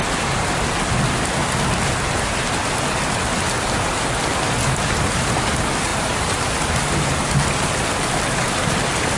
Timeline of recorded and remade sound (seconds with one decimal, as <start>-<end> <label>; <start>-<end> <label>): 0.0-5.9 recorded; 5.9-7.3 remade; 7.3-9.2 recorded